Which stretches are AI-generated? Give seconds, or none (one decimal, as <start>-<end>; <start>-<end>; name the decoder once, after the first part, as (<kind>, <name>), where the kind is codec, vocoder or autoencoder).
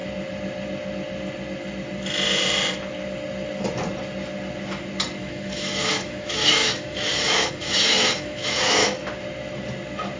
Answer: 5.2-9.0 (autoencoder, DAC-VAE)